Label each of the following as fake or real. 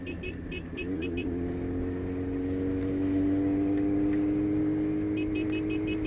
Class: real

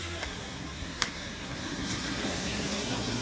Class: fake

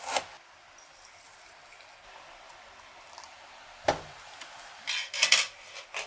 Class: real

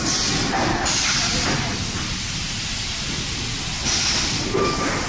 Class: real